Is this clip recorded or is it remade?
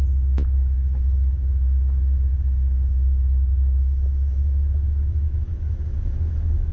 remade